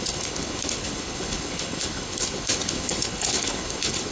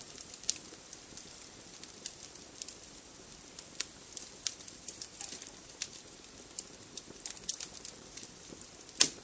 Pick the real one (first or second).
second